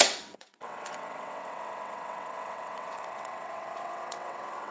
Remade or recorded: remade